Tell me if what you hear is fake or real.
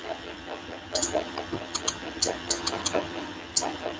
fake